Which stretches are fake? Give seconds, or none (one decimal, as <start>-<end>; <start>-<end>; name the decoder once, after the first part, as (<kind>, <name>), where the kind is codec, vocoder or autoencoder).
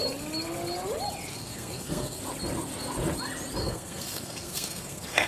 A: 1.3-2.2 (codec, SNAC); 3.6-5.3